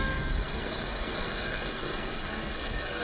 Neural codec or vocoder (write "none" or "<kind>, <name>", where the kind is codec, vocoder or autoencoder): codec, SNAC